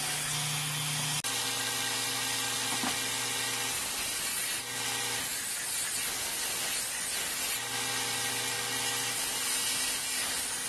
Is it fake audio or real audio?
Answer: real